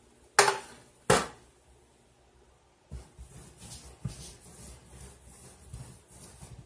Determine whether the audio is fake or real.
real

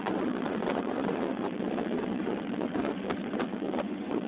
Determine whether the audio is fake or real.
fake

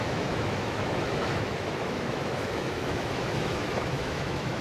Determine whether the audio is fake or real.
fake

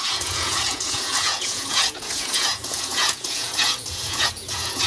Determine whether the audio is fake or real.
fake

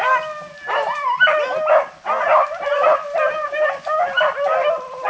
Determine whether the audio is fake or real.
real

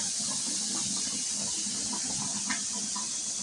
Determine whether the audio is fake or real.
real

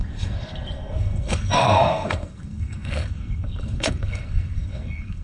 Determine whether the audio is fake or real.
fake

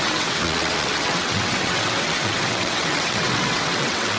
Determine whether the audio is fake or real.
fake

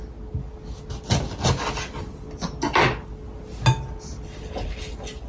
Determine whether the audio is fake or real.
real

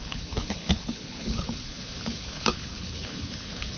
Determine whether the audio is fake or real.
fake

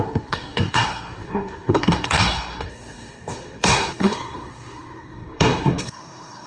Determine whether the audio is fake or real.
fake